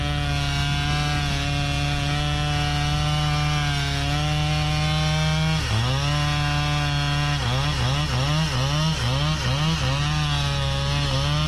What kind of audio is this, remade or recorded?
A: recorded